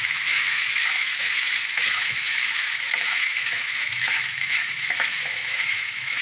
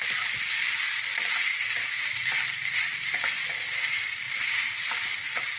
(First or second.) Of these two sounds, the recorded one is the second